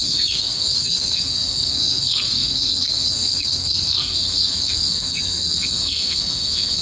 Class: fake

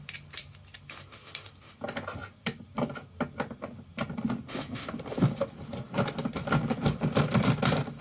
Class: real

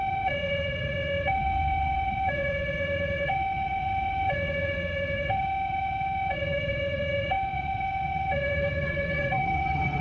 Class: fake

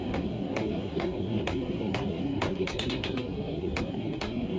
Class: fake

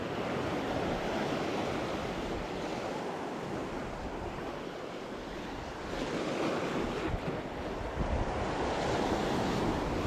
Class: real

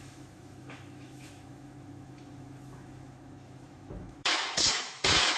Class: fake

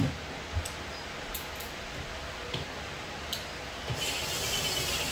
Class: real